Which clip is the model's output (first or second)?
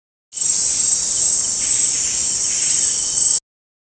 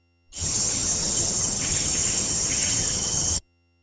second